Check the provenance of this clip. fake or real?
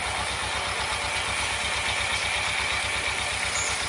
real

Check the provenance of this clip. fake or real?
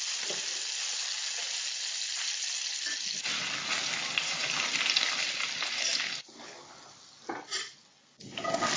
real